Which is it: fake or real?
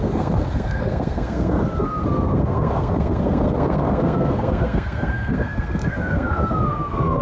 fake